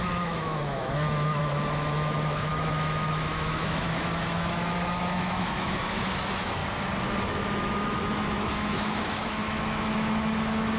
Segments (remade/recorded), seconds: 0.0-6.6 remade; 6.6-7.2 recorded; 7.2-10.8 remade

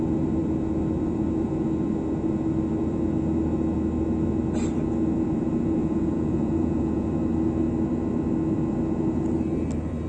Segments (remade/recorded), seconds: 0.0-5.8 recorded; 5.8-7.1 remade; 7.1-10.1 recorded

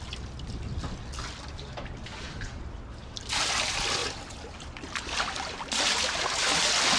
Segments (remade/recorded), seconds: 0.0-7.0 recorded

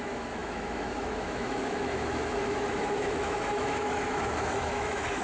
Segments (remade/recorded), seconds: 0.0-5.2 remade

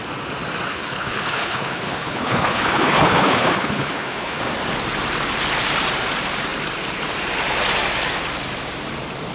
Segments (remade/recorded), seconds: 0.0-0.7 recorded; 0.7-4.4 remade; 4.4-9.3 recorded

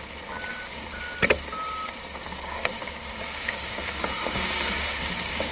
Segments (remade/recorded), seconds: 0.0-0.5 recorded; 0.5-1.0 remade; 1.0-2.2 recorded; 2.2-5.5 remade

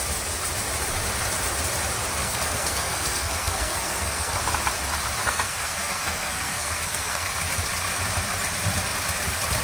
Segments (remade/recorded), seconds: 0.0-2.2 recorded; 2.2-4.4 remade; 4.4-5.2 recorded; 5.2-7.3 remade; 7.3-9.6 recorded